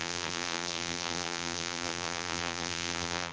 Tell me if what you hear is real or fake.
fake